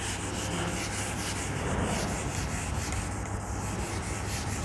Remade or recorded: recorded